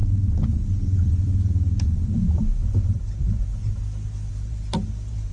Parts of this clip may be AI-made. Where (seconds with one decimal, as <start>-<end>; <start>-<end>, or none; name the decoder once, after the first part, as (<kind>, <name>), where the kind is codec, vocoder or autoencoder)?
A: 0.0-3.5 (vocoder, BigVGAN v2); 4.3-5.3